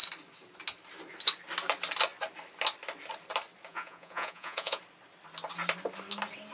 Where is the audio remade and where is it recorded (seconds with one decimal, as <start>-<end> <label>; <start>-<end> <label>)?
0.0-3.7 recorded; 3.7-4.8 remade; 4.8-6.5 recorded